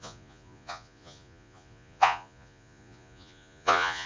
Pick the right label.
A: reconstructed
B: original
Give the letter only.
A